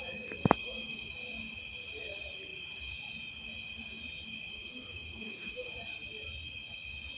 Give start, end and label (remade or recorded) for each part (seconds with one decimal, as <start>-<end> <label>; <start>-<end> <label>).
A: 0.0-0.4 recorded; 0.4-1.1 remade; 1.1-4.5 recorded; 4.5-5.7 remade; 5.7-7.2 recorded